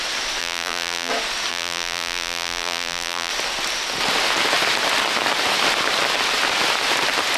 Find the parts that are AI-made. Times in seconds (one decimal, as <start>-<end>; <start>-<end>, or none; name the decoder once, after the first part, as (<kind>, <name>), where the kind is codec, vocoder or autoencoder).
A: 0.4-1.1 (vocoder, BigVGAN v2); 1.5-3.3